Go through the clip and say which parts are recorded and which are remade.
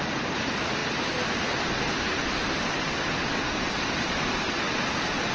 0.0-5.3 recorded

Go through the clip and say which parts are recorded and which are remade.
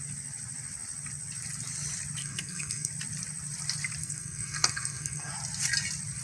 0.0-2.2 recorded; 2.2-2.9 remade; 2.9-4.0 recorded; 4.0-5.3 remade; 5.3-6.2 recorded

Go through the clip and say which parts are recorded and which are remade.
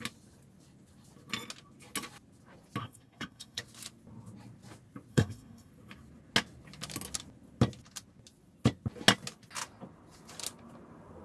0.0-2.8 recorded; 2.8-3.6 remade; 3.6-5.1 recorded; 5.1-5.7 remade; 5.7-11.2 recorded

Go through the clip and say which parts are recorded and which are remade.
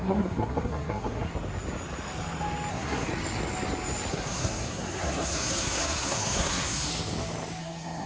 0.0-1.3 remade; 1.3-2.7 recorded; 2.7-3.1 remade; 3.1-4.1 recorded; 4.1-6.9 remade; 6.9-7.6 recorded; 7.6-8.1 remade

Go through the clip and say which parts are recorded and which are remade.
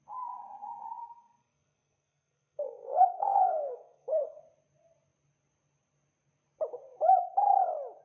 0.0-1.0 recorded; 1.0-4.4 remade; 4.4-8.0 recorded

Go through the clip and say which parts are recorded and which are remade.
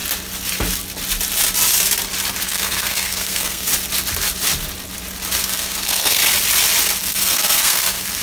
0.0-2.4 recorded; 2.4-3.7 remade; 3.7-5.4 recorded; 5.4-6.2 remade; 6.2-7.0 recorded; 7.0-8.2 remade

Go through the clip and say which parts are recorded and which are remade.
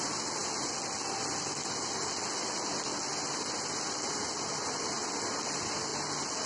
0.0-6.5 recorded